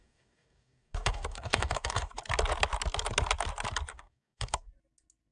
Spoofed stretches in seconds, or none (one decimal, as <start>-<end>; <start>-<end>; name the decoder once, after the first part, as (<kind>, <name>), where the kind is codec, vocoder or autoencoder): 0.0-2.1 (codec, DAC); 3.9-4.7